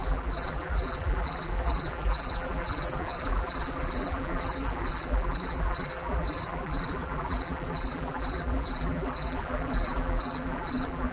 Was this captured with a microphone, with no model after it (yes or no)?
no